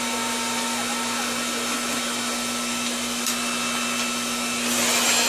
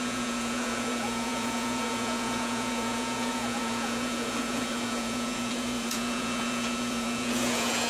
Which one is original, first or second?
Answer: first